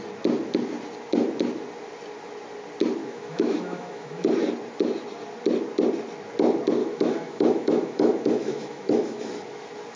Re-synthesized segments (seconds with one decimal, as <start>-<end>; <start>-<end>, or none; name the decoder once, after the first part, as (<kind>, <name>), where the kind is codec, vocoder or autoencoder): 3.0-4.3 (autoencoder, DAC-VAE); 6.8-9.3